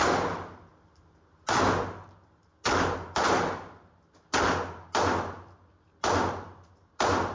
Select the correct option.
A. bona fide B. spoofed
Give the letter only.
A